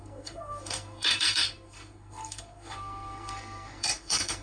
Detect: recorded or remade remade